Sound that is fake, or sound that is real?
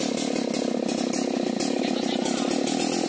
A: real